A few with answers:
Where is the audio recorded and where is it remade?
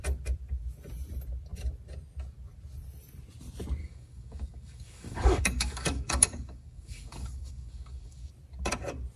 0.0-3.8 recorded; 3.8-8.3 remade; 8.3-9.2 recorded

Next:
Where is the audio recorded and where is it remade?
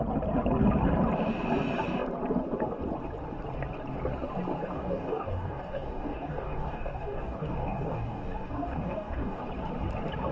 0.0-4.6 recorded; 4.6-9.4 remade; 9.4-10.3 recorded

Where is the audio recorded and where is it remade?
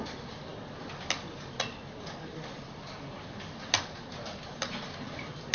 0.0-5.5 recorded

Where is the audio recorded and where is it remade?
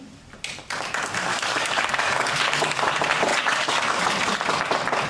0.0-1.3 recorded; 1.3-2.9 remade; 2.9-3.3 recorded; 3.3-4.0 remade; 4.0-5.1 recorded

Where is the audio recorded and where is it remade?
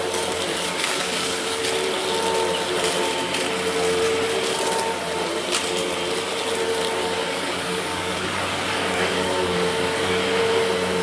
0.0-0.5 recorded; 0.5-1.6 remade; 1.6-7.0 recorded; 7.0-10.4 remade; 10.4-11.0 recorded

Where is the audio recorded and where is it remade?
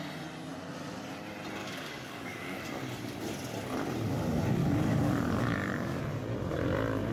0.0-1.6 recorded; 1.6-2.6 remade; 2.6-4.6 recorded; 4.6-6.0 remade; 6.0-7.1 recorded